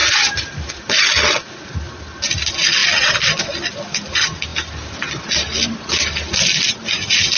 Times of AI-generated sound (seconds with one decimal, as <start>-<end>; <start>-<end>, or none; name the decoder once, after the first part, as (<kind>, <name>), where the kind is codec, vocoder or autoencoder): none